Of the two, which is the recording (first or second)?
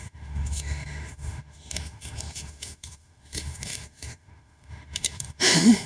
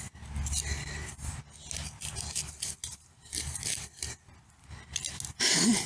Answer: second